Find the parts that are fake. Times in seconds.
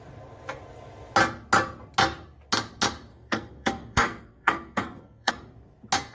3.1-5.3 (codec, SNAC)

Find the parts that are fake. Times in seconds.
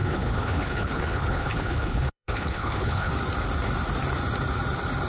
0.0-3.1 (codec, HILCodec)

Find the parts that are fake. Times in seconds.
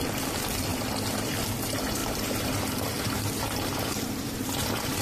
2.0-5.0 (vocoder, BigVGAN v2)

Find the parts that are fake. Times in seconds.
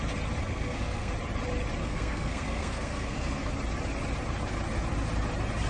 0.4-1.1 (codec, SNAC); 1.8-3.5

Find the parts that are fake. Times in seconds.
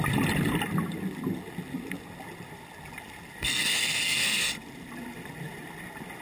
3.4-4.5 (codec, SNAC)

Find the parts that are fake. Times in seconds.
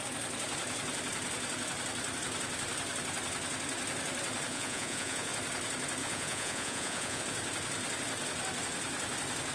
4.5-5.3 (vocoder, Vocos); 6.0-7.2